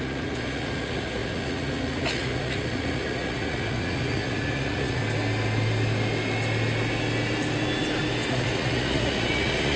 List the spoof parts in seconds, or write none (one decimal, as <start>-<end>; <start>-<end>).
0.0-5.0; 8.3-9.8